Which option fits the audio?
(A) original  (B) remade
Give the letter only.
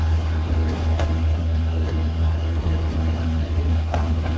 B